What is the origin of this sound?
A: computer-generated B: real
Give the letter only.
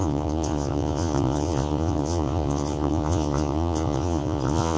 A